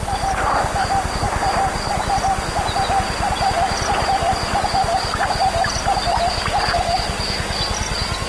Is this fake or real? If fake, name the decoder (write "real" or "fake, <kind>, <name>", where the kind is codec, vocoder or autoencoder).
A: real